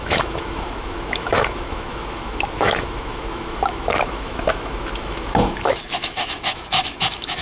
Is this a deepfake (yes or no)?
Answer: yes